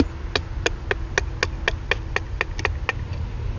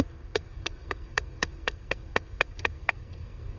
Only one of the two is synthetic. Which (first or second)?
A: second